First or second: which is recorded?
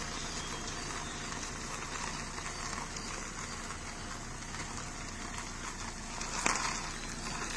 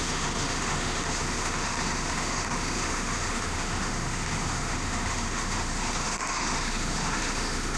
first